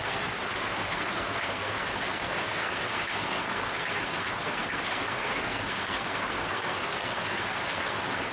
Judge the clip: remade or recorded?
remade